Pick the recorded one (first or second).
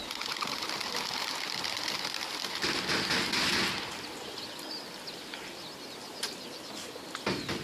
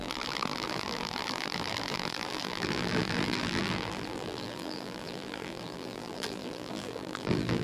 first